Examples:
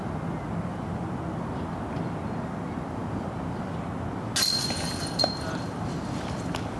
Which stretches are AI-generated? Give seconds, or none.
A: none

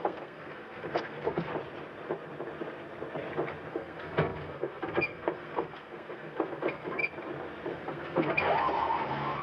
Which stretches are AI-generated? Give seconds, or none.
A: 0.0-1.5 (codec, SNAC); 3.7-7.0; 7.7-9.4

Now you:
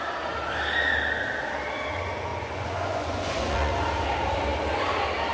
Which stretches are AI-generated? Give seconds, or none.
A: 2.3-3.7 (vocoder, Vocos)